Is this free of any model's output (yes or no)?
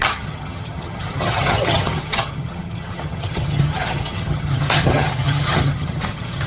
no